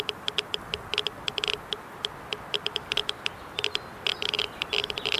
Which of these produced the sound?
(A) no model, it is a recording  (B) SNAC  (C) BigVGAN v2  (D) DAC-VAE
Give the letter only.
A